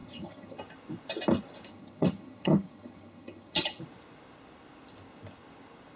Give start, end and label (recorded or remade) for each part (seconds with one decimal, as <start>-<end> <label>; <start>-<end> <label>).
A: 0.0-0.6 remade; 0.6-1.7 recorded; 1.7-3.8 remade; 3.8-6.0 recorded